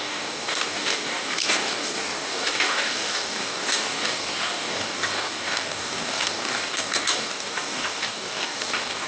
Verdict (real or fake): fake